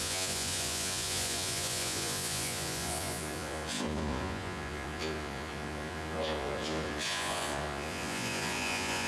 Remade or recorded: remade